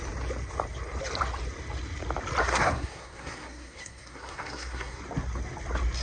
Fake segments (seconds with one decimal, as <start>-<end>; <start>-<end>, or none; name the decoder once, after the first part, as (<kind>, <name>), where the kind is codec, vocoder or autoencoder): 2.4-5.0 (codec, SNAC)